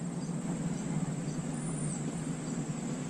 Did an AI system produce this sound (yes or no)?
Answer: no